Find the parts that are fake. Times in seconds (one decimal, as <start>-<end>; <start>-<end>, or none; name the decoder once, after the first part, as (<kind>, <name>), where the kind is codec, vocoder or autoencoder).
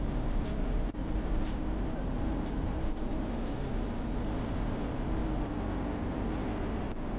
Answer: 0.0-5.2 (vocoder, BigVGAN v2); 6.0-7.2